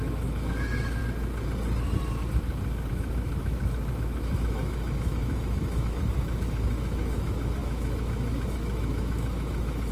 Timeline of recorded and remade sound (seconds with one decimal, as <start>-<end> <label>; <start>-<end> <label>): 0.0-1.0 remade; 1.0-2.9 recorded; 2.9-9.9 remade